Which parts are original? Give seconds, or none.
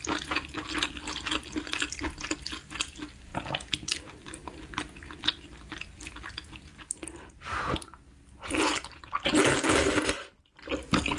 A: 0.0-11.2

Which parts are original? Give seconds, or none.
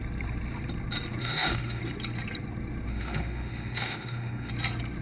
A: 0.0-1.2; 1.8-2.9; 4.5-5.0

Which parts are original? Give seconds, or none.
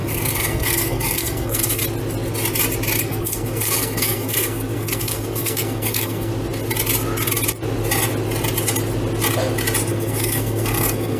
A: 1.8-3.0; 6.3-9.9